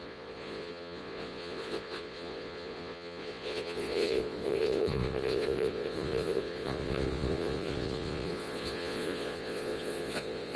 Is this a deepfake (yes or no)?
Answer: yes